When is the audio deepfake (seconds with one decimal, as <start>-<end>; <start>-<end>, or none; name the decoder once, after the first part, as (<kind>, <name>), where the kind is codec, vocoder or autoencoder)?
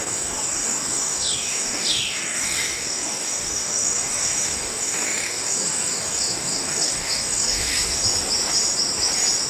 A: 0.0-7.9 (codec, DAC)